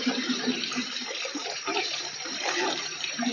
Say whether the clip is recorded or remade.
remade